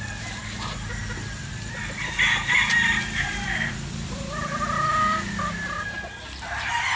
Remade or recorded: remade